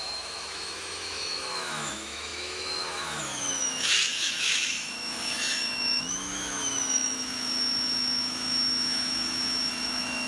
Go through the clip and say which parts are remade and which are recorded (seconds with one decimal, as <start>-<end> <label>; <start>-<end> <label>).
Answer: 0.0-10.3 remade